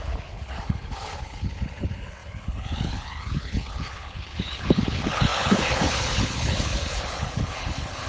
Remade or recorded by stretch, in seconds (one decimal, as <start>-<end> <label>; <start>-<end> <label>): 0.0-8.1 remade